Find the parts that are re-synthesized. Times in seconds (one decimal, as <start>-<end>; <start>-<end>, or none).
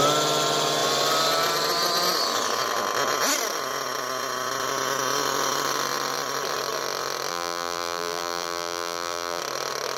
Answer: 7.3-9.4